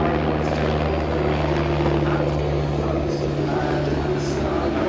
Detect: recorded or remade recorded